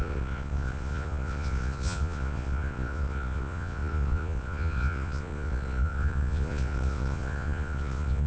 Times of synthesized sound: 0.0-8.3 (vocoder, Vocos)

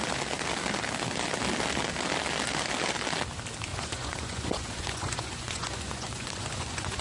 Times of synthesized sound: 3.7-7.0 (vocoder, Vocos)

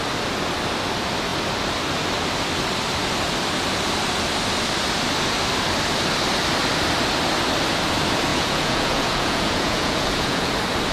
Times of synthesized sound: 8.3-10.5 (vocoder, Vocos)

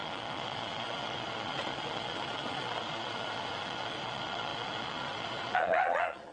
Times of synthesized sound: 0.0-6.3 (vocoder, Vocos)